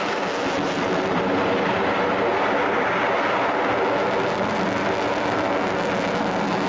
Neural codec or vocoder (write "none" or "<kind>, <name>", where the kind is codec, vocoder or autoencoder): none